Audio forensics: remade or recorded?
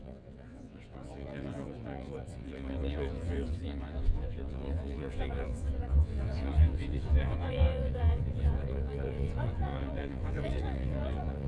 remade